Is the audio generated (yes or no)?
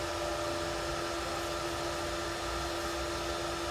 no